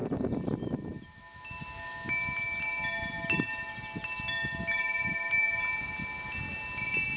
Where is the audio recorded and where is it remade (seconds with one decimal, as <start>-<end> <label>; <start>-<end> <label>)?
0.0-7.2 recorded